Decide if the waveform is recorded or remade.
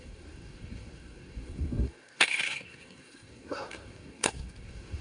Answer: remade